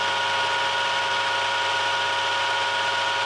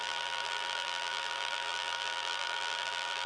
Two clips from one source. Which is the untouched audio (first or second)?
first